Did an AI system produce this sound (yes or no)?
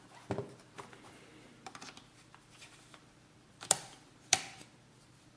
no